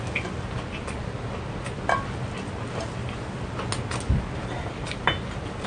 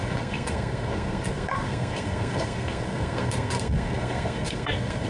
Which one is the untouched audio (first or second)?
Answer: first